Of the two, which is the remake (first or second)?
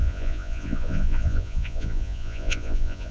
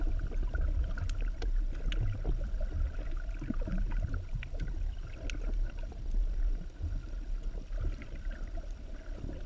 first